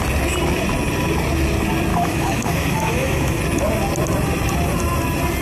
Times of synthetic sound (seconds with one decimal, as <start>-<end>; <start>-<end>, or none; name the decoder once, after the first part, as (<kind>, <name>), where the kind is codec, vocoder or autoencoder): 1.9-3.4 (autoencoder, DAC-VAE)